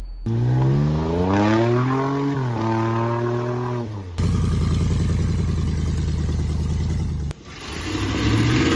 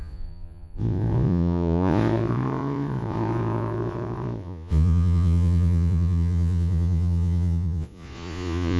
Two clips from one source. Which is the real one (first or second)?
first